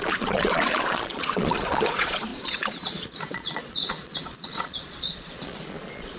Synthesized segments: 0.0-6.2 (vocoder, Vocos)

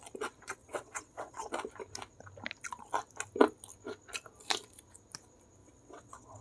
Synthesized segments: 0.6-1.5 (vocoder, WaveNeXt); 5.6-6.4

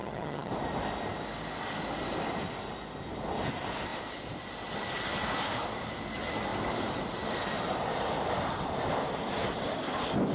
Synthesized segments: 0.0-0.5 (vocoder, HiFi-GAN)